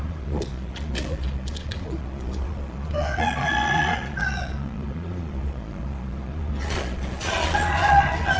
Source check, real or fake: fake